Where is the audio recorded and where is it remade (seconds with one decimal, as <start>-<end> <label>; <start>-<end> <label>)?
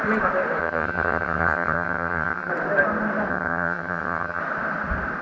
0.0-0.6 recorded; 0.6-2.5 remade; 2.5-3.3 recorded; 3.3-4.4 remade; 4.4-5.2 recorded